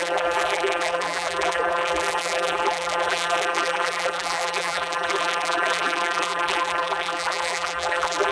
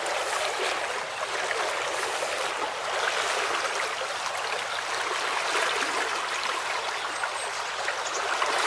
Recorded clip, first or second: second